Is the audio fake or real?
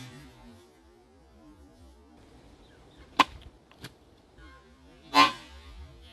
real